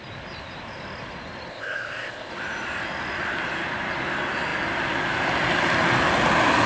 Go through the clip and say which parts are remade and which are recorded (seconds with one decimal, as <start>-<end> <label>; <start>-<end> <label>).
0.0-1.5 recorded; 1.5-2.3 remade; 2.3-6.7 recorded